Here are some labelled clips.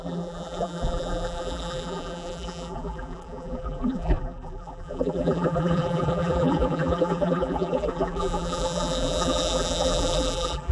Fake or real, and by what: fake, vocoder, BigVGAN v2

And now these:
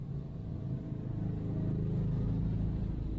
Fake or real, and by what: real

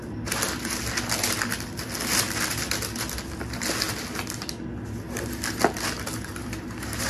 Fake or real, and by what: real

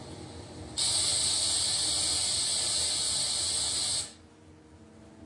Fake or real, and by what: real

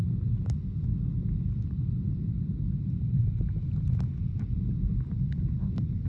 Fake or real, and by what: real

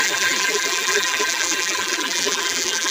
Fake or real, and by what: fake, vocoder, BigVGAN v2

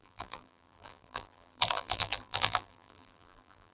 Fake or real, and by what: fake, vocoder, BigVGAN v2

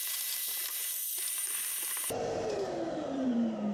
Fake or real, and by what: fake, vocoder, BigVGAN v2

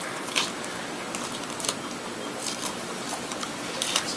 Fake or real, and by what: fake, vocoder, BigVGAN v2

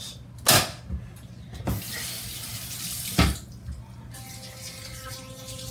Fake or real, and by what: real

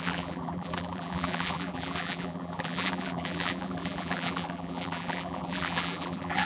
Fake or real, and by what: fake, vocoder, BigVGAN v2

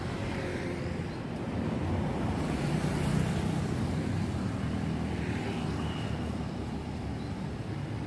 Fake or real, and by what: fake, vocoder, BigVGAN v2